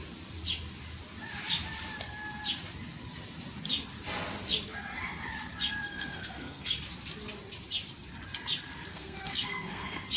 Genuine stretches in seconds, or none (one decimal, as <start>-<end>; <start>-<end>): 0.0-5.7; 6.7-8.9

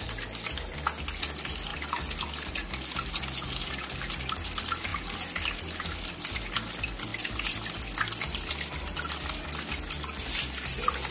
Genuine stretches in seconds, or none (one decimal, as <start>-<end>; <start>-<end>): 0.0-11.1

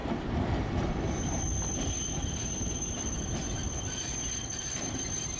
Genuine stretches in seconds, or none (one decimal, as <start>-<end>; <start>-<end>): 3.2-3.6

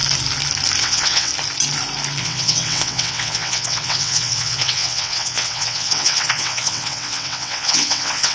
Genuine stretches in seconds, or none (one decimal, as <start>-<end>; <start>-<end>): 0.0-0.8; 1.3-2.2

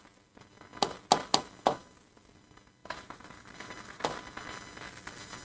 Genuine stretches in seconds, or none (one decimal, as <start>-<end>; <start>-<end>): 0.0-2.8; 4.0-5.4

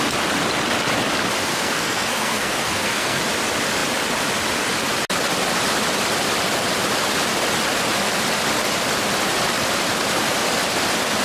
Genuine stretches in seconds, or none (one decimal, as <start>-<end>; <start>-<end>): 0.0-1.5; 3.2-11.2